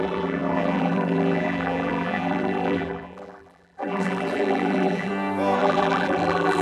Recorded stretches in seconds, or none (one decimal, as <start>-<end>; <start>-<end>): 5.1-5.6